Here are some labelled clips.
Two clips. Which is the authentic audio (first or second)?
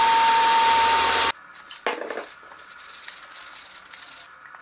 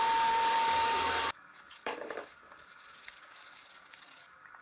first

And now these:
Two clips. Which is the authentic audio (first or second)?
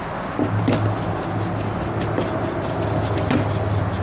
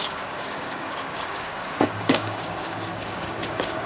first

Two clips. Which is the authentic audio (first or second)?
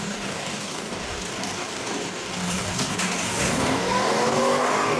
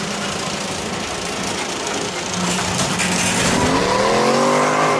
second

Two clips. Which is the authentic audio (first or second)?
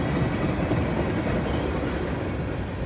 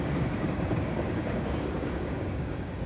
first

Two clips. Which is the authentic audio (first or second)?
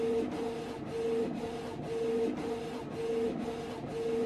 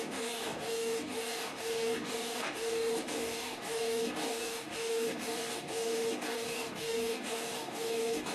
first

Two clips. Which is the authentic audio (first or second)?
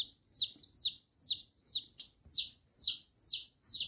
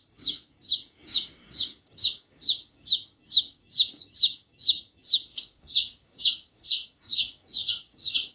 first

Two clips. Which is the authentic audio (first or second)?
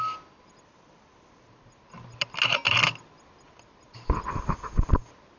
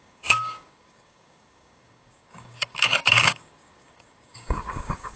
first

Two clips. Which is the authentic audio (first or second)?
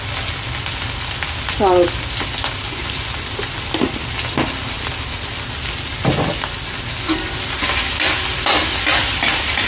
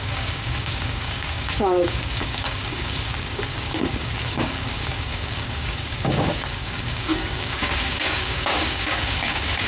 first